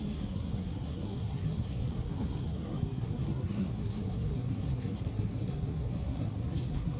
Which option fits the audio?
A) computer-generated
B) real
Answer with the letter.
A